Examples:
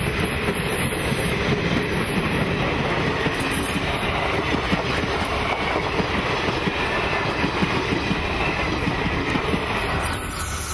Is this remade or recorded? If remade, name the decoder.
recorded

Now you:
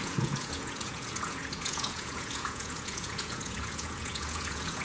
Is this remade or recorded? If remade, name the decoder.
remade, vocoder, Vocos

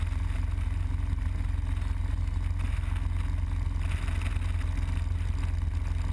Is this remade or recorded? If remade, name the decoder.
recorded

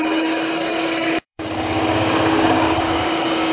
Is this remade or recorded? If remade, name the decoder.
remade, codec, DAC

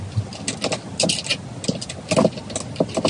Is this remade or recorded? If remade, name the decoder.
recorded